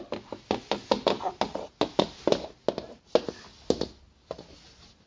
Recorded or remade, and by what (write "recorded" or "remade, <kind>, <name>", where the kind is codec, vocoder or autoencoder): recorded